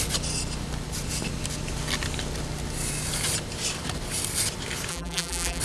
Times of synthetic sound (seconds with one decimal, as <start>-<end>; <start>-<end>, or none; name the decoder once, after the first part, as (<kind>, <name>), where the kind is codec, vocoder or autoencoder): 4.9-5.6 (vocoder, BigVGAN v2)